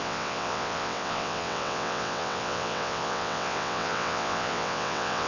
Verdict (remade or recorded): remade